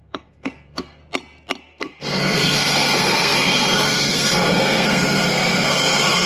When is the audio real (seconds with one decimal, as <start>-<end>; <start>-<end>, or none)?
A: 1.0-1.6